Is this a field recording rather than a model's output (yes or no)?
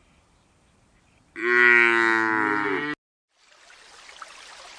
yes